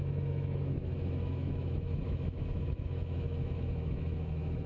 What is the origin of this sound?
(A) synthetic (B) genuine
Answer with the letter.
A